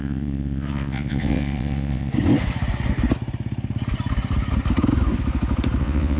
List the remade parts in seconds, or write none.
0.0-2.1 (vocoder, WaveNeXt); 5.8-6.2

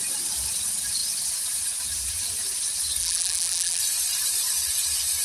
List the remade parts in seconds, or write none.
3.0-3.8 (vocoder, BigVGAN v2)

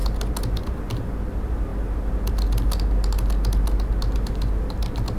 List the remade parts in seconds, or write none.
none